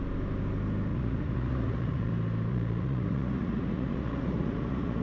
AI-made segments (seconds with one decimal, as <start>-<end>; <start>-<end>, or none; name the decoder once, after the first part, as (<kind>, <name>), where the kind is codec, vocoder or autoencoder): 0.9-2.1 (vocoder, Vocos); 2.5-5.0